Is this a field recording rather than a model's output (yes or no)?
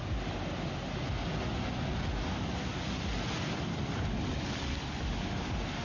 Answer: yes